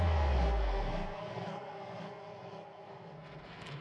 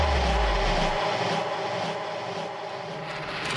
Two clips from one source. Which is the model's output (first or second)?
first